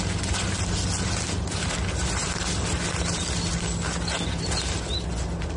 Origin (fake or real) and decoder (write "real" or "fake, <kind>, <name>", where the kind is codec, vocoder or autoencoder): real